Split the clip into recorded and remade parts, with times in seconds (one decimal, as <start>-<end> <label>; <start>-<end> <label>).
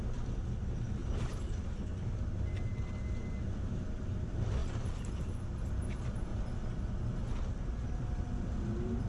0.0-1.0 remade; 1.0-4.0 recorded; 4.0-4.6 remade; 4.6-5.2 recorded; 5.2-6.3 remade; 6.3-7.5 recorded; 7.5-9.1 remade